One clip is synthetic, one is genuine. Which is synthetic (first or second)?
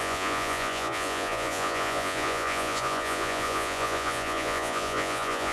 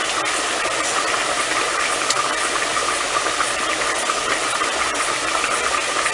first